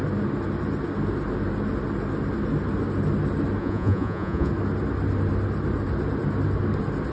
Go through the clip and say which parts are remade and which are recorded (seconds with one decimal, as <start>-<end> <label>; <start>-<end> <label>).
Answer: 0.0-3.6 recorded; 3.6-4.5 remade; 4.5-7.1 recorded